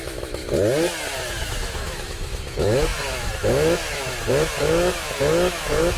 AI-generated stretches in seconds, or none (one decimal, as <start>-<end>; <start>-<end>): 0.0-0.4; 1.3-6.0